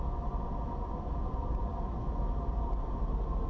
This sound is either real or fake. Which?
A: real